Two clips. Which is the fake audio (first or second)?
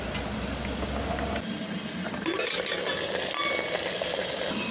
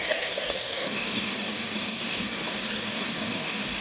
second